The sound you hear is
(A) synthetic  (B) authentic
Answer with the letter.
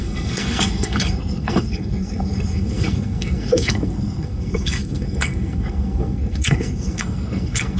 A